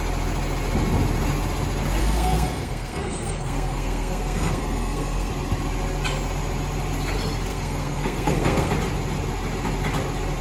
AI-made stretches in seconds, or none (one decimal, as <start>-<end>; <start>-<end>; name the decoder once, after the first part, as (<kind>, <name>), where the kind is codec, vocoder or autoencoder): 2.0-5.3 (codec, SNAC); 7.5-8.7